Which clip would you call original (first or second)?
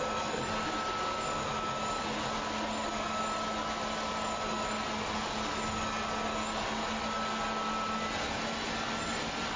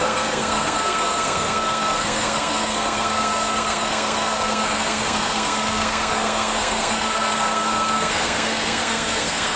first